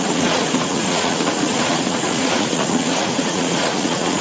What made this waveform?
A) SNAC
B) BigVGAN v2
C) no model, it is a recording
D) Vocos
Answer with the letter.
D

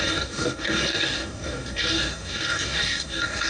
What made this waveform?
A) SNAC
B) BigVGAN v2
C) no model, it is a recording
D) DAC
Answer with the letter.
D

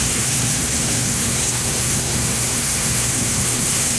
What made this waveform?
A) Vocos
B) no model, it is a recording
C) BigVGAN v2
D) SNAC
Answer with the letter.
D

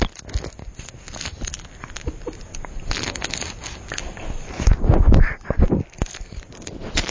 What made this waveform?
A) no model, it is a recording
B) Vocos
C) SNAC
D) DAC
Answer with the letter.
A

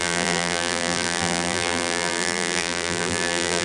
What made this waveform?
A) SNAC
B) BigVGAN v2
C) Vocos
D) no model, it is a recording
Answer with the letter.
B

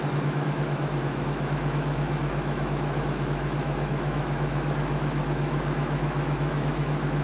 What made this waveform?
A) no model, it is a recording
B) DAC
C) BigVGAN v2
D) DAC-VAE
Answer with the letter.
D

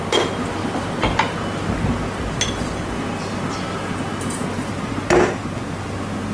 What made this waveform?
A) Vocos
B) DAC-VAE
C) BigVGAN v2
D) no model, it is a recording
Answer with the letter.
D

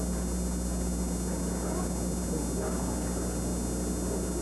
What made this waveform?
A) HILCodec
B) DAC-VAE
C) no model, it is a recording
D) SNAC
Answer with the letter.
C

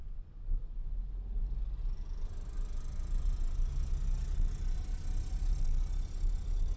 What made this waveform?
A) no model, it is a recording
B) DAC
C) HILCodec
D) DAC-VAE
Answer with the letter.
A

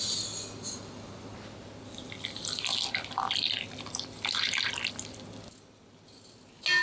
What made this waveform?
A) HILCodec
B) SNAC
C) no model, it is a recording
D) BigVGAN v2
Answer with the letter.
C